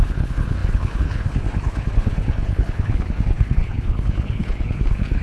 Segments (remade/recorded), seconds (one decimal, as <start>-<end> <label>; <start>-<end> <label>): 0.0-5.2 remade